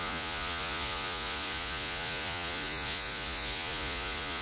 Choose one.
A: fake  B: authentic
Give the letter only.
A